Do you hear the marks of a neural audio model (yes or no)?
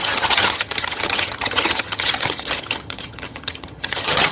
yes